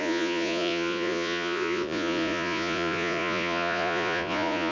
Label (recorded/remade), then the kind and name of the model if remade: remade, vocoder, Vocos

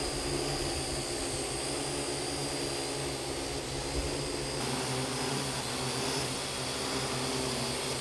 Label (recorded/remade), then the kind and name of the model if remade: recorded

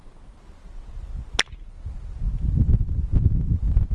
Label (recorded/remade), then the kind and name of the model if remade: recorded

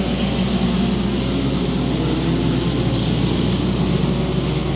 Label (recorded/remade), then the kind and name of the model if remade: recorded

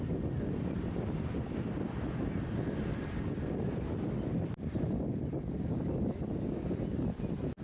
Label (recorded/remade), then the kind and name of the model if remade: remade, vocoder, BigVGAN v2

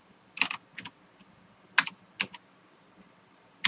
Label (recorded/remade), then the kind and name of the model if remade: recorded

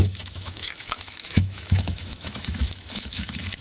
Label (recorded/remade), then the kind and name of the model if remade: remade, autoencoder, DAC-VAE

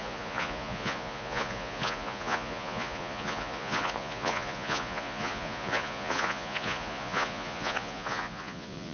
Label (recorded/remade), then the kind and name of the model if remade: remade, vocoder, Vocos